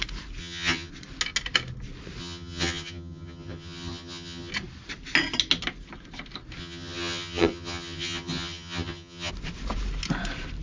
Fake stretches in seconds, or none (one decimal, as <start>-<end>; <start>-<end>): 0.4-0.9; 2.2-4.5; 6.6-9.3